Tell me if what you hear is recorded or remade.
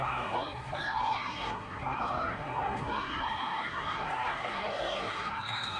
remade